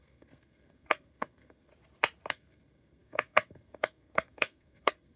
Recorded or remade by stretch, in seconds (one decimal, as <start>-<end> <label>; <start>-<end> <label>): 0.0-1.7 remade; 1.7-2.3 recorded; 2.3-5.2 remade